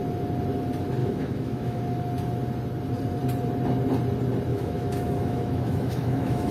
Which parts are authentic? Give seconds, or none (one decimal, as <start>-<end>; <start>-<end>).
0.0-1.0; 1.8-4.5